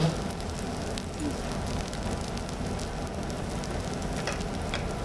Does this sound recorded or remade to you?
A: recorded